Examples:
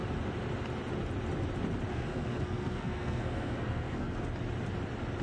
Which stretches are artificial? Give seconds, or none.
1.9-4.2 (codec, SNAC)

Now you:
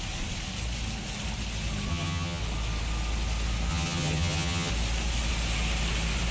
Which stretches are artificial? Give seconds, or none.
1.9-2.4 (vocoder, HiFi-GAN); 3.7-4.7

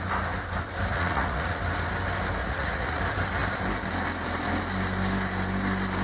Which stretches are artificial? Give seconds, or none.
0.9-1.6 (vocoder, Vocos); 2.4-3.0

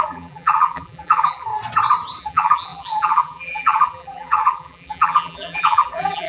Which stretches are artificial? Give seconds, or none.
0.0-1.5 (vocoder, BigVGAN v2); 2.2-6.3

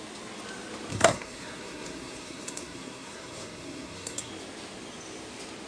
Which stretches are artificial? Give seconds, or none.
0.9-4.3 (codec, SNAC)

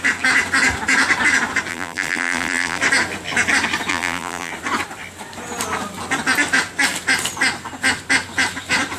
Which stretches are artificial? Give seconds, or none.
1.7-2.8 (vocoder, BigVGAN v2); 3.9-4.5

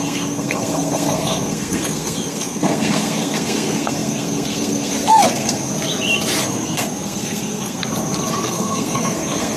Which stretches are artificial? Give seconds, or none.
0.0-5.7 (codec, SNAC); 6.4-7.8; 8.3-9.6

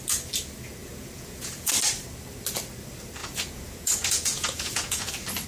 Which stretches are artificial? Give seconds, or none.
0.8-1.7 (vocoder, Vocos); 3.2-5.1